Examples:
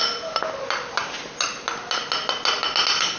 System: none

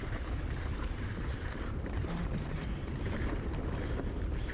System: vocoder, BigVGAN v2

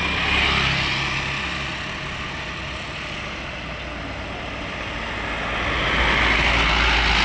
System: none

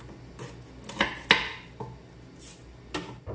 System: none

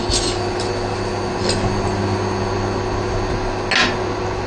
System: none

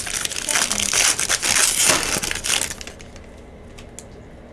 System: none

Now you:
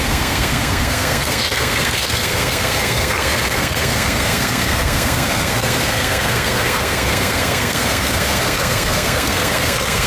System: codec, SNAC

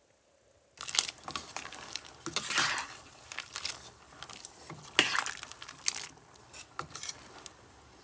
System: none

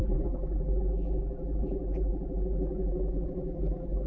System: vocoder, BigVGAN v2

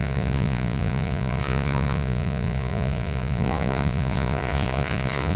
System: vocoder, Vocos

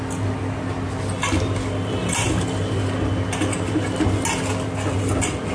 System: none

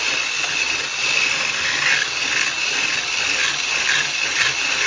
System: none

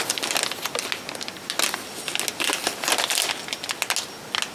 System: none